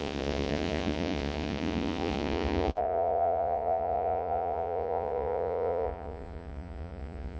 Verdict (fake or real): fake